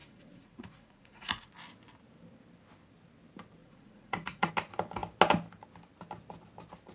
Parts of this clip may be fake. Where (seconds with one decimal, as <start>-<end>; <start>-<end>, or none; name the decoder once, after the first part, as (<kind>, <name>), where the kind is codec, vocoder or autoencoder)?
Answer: 0.0-1.5 (vocoder, Vocos); 3.6-4.5